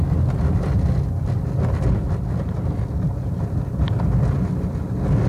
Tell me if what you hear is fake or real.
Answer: real